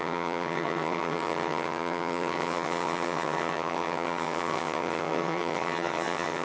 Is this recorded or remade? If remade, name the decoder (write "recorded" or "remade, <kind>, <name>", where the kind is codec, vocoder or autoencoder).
remade, vocoder, HiFi-GAN